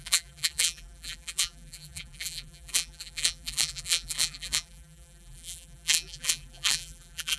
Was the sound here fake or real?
fake